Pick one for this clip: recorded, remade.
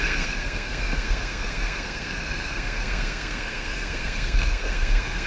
remade